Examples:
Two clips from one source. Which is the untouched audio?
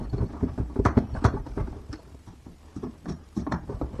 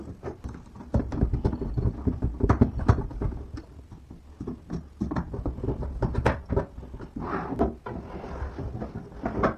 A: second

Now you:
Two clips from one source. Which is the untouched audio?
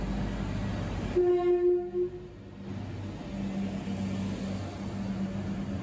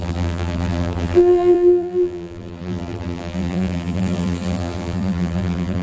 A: first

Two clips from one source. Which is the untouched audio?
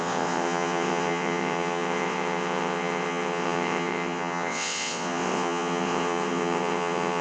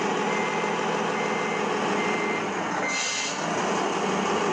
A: second